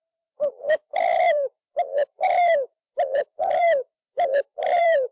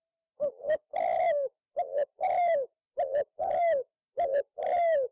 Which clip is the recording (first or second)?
second